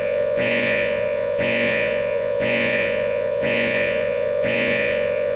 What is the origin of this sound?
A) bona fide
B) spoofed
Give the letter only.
B